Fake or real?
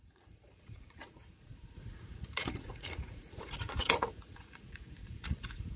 fake